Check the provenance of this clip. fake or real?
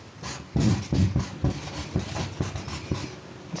real